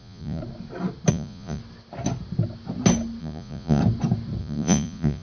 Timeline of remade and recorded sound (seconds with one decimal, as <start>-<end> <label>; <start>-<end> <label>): 0.0-0.4 remade; 0.4-1.1 recorded; 1.1-1.6 remade; 1.6-3.2 recorded; 3.2-3.8 remade; 3.8-4.4 recorded; 4.4-5.2 remade